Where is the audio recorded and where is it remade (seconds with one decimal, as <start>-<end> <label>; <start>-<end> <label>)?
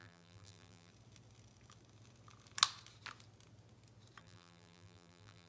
0.0-0.9 remade; 0.9-4.2 recorded; 4.2-5.5 remade